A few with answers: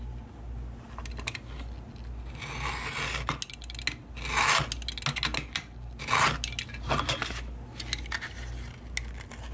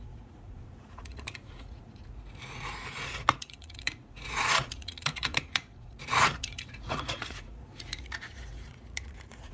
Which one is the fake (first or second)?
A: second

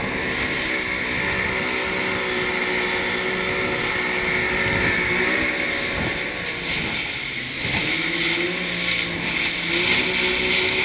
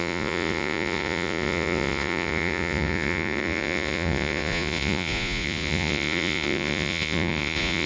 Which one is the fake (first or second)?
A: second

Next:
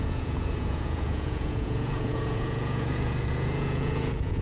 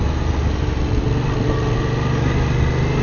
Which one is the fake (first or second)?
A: first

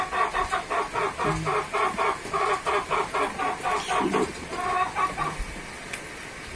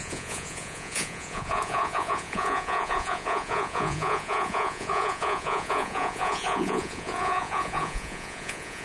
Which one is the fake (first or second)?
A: second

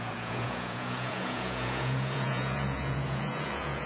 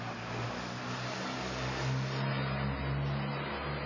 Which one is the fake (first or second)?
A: first